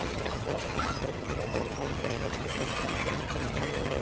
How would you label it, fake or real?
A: fake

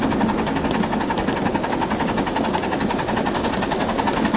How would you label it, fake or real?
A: real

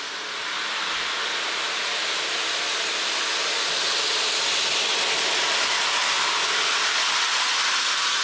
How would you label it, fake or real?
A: real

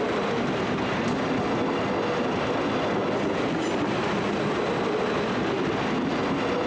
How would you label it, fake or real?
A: real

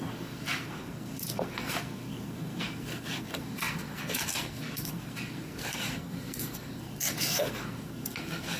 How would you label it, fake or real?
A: fake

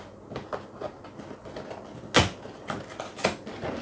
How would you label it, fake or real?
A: real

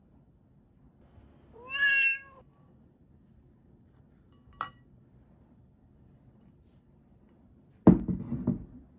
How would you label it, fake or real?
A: real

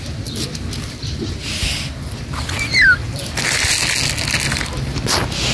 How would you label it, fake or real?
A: real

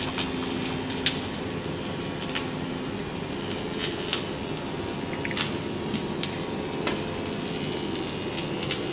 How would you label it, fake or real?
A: real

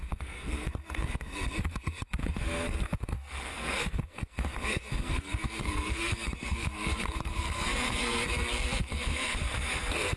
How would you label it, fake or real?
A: fake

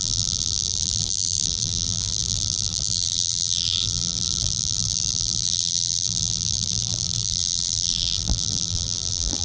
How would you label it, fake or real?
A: fake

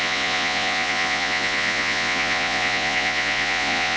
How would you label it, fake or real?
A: fake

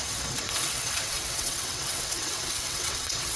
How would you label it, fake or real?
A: fake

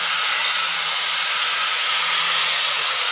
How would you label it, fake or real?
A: fake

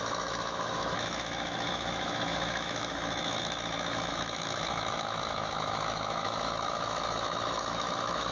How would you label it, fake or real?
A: fake